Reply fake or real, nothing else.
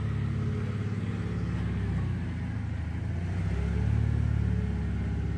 real